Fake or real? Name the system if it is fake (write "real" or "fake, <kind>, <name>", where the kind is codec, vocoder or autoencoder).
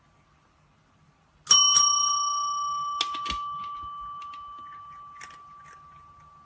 real